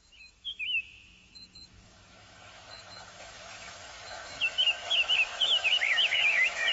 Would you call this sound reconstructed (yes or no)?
yes